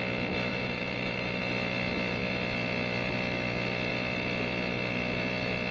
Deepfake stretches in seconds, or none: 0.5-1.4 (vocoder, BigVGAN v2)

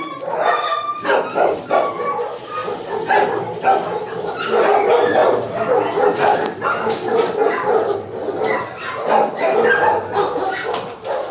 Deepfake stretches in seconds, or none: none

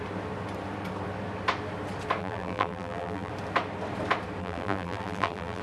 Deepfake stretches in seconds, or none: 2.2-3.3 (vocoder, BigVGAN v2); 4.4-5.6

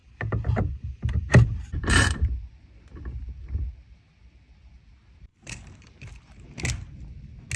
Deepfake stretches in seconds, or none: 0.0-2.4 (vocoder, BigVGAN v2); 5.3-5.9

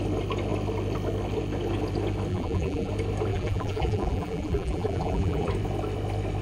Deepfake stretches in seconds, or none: 2.3-2.9 (vocoder, BigVGAN v2); 3.3-5.5